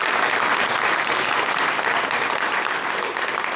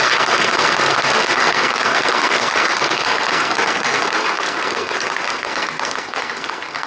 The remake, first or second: second